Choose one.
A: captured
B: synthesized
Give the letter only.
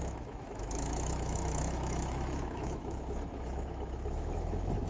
B